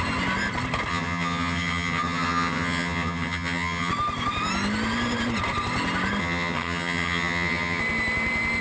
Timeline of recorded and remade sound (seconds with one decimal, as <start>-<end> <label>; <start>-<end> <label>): 0.0-0.9 recorded; 0.9-3.9 remade; 3.9-6.2 recorded; 6.2-7.8 remade; 7.8-8.6 recorded